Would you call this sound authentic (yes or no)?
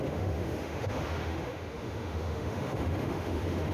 no